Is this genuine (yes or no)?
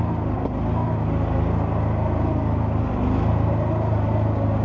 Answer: yes